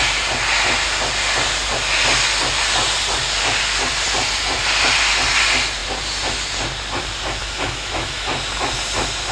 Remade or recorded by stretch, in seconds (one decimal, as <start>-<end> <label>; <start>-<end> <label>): 0.0-7.4 recorded; 7.4-8.3 remade; 8.3-9.3 recorded